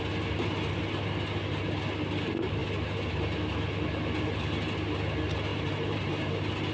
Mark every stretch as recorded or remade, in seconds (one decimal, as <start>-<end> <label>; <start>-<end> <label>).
0.0-5.5 recorded; 5.5-6.3 remade; 6.3-6.7 recorded